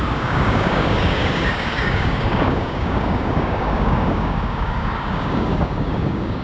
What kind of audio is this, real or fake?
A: fake